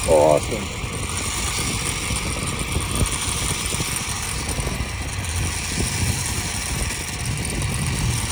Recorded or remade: recorded